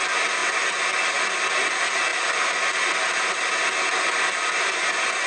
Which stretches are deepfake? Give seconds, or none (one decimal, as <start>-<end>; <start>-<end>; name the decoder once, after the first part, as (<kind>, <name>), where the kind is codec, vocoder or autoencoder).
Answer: none